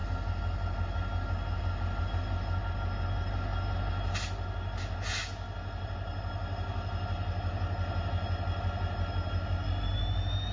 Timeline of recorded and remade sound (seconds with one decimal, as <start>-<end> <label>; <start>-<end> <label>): 0.0-10.5 recorded